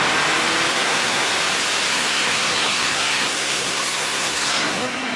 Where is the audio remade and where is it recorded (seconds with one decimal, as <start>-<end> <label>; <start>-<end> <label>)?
0.0-0.7 recorded; 0.7-1.3 remade; 1.3-1.9 recorded; 1.9-5.2 remade